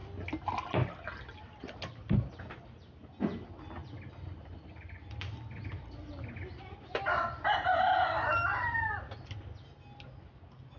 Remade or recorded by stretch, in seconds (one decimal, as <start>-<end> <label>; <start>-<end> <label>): 0.0-3.8 recorded; 3.8-8.9 remade; 8.9-10.8 recorded